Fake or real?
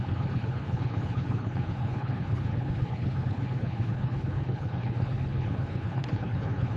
fake